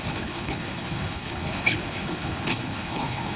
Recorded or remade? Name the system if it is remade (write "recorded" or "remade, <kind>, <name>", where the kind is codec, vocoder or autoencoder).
remade, codec, HILCodec